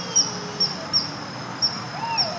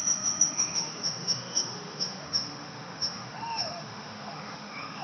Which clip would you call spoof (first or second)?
second